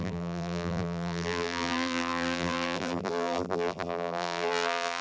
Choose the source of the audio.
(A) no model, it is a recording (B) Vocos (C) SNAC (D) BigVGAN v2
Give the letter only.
D